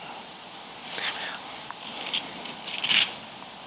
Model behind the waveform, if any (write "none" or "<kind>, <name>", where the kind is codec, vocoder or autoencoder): vocoder, BigVGAN v2